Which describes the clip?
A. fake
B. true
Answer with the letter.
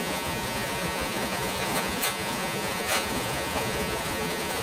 A